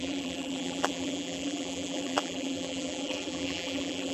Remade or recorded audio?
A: remade